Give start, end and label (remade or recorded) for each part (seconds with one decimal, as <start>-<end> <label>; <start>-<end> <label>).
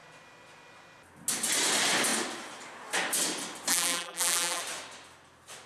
0.0-3.7 recorded; 3.7-4.6 remade; 4.6-5.7 recorded